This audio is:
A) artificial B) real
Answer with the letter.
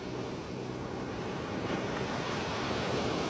B